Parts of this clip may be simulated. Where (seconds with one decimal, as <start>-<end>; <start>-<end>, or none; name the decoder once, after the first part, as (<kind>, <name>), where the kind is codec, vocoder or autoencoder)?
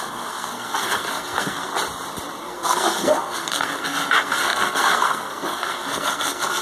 0.0-1.7 (codec, SNAC); 2.4-6.6